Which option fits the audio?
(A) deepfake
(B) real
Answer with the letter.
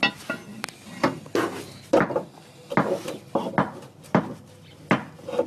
B